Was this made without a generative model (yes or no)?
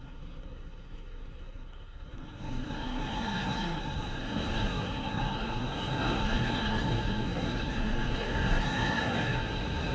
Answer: no